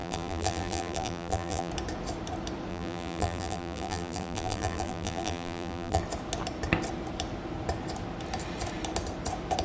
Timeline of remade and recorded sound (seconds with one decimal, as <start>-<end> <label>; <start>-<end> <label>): 0.0-1.7 remade; 1.7-2.7 recorded; 2.7-6.0 remade; 6.0-9.6 recorded